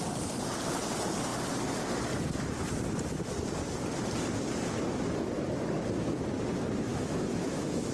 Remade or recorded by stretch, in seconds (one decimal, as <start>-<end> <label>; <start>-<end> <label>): 0.0-6.9 recorded; 6.9-7.9 remade